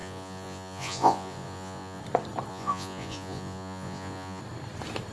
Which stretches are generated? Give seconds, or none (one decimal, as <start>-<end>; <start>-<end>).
0.0-2.0; 2.5-4.4